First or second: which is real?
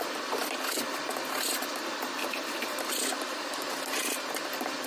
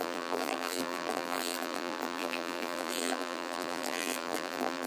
first